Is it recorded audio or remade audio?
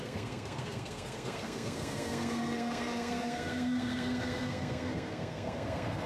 remade